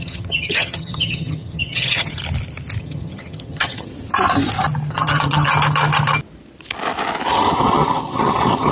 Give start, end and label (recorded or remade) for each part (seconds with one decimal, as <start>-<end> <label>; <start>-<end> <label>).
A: 0.0-2.2 remade; 2.2-2.8 recorded; 2.8-3.9 remade; 3.9-4.9 recorded; 4.9-5.5 remade; 5.5-7.3 recorded; 7.3-8.7 remade